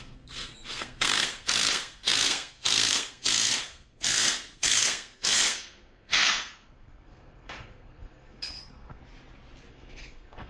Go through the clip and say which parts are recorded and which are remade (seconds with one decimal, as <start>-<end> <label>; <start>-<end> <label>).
0.0-9.0 remade; 9.0-9.7 recorded; 9.7-10.5 remade

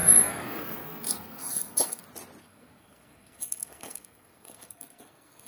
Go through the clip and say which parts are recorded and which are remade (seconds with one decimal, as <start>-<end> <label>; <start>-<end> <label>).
0.0-2.0 remade; 2.0-2.4 recorded; 2.4-5.5 remade

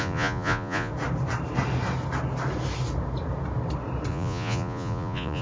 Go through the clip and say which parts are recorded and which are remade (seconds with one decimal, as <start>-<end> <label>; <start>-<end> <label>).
0.0-0.9 remade; 0.9-4.1 recorded; 4.1-5.4 remade